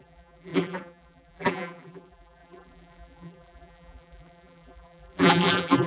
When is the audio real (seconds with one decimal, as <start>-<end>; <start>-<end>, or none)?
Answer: none